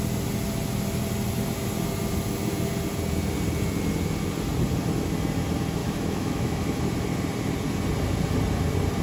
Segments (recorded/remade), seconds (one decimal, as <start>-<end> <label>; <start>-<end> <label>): 0.0-5.8 recorded; 5.8-6.8 remade; 6.8-9.0 recorded